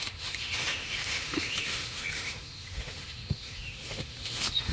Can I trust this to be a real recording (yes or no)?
no